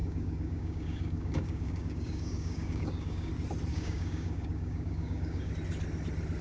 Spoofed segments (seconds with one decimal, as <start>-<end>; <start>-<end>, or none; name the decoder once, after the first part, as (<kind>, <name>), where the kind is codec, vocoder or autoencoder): 0.0-3.3 (codec, DAC); 3.7-5.5